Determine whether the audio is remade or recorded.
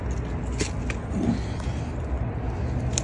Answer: recorded